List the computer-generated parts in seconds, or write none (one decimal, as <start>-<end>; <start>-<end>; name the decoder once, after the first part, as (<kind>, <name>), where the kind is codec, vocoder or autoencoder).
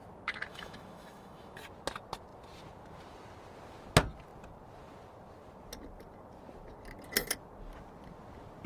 0.5-1.6 (autoencoder, DAC-VAE)